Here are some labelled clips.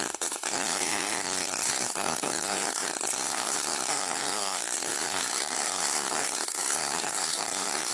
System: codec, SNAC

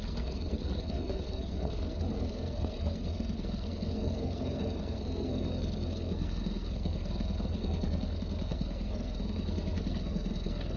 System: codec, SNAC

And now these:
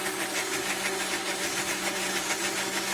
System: none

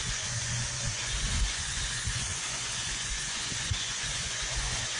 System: vocoder, Vocos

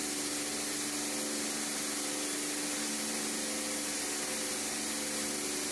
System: none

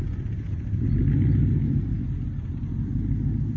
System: none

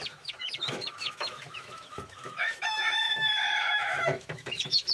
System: autoencoder, DAC-VAE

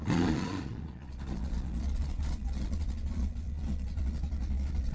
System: vocoder, Vocos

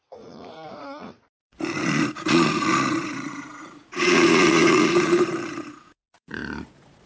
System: vocoder, Vocos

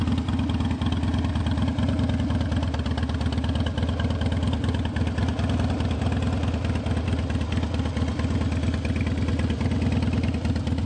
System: none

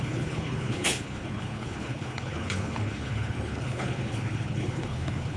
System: codec, HILCodec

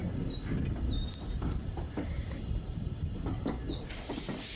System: none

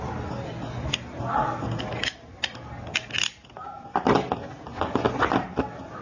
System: none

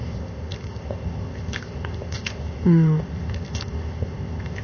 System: codec, ZipCodec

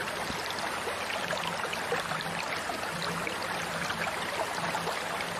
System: none